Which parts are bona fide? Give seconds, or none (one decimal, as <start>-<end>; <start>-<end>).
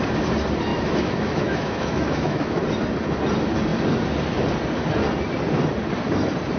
0.0-0.7; 2.6-6.6